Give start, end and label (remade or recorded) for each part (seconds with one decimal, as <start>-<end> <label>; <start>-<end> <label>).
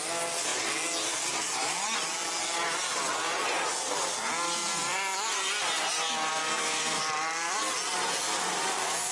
0.0-6.3 recorded; 6.3-7.0 remade; 7.0-9.1 recorded